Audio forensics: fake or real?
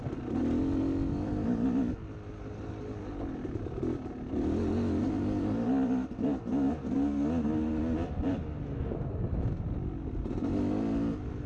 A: real